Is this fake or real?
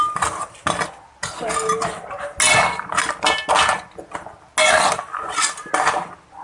real